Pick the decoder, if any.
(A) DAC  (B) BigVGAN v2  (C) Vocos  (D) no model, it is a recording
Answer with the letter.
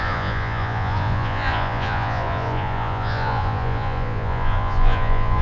C